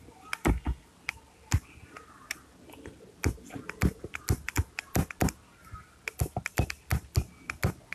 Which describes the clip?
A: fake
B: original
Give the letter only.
B